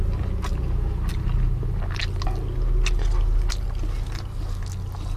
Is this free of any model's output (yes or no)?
yes